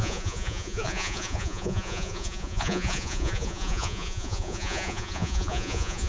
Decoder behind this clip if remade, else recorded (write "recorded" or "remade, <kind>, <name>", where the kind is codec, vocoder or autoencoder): remade, vocoder, Vocos